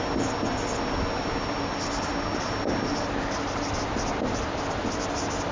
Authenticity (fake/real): real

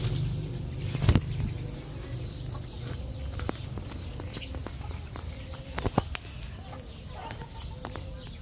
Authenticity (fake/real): real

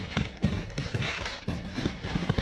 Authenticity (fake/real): fake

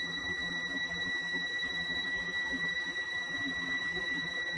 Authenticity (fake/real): fake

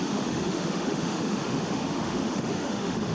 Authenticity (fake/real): fake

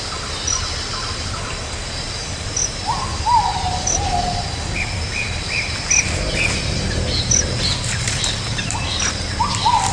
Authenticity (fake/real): real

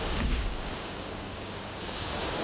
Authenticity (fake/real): fake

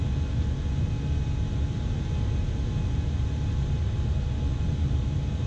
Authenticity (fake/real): real